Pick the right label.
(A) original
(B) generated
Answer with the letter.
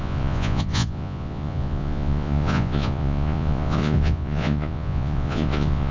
B